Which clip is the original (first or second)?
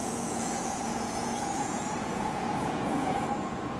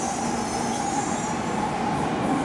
second